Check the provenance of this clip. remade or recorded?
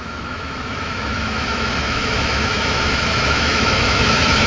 remade